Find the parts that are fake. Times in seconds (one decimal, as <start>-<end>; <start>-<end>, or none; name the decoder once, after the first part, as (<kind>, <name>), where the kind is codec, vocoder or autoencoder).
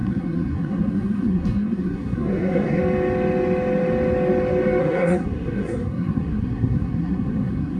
0.0-2.8 (codec, SNAC); 4.8-7.8